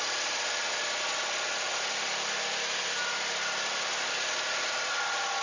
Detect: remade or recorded recorded